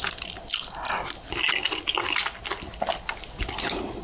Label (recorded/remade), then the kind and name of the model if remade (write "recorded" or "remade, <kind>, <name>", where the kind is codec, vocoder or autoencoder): recorded